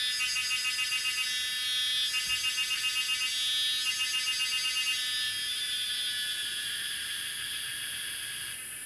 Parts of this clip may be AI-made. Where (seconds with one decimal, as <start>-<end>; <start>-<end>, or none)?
none